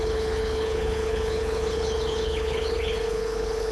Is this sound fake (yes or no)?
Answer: yes